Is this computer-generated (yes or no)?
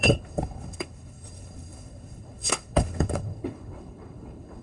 yes